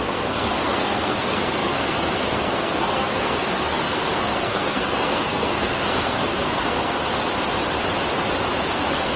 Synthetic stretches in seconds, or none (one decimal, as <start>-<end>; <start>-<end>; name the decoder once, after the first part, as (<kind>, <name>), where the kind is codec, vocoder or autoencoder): 0.0-7.1 (codec, SNAC); 8.7-9.2